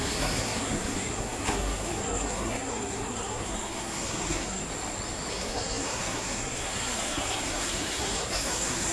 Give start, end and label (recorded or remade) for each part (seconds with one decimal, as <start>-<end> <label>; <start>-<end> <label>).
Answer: 0.0-4.6 remade; 4.6-5.3 recorded; 5.3-8.9 remade